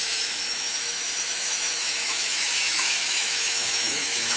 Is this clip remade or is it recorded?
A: remade